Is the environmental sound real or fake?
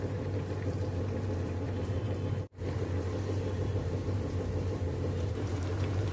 fake